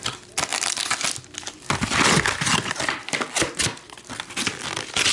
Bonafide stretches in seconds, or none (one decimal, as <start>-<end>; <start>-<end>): 0.0-0.5; 3.6-5.1